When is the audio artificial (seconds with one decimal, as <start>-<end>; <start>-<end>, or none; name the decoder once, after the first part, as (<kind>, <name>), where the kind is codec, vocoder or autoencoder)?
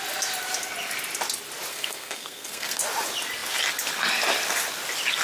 1.7-2.8 (codec, SNAC)